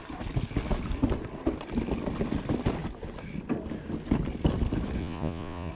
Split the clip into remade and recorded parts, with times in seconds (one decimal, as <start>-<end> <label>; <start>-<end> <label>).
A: 0.0-5.0 recorded; 5.0-5.7 remade